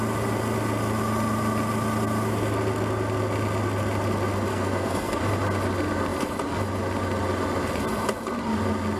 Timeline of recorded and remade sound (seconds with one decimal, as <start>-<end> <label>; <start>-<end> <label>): 0.0-4.5 recorded; 4.5-5.2 remade; 5.2-9.0 recorded